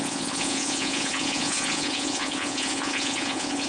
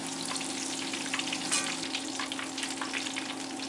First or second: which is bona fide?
second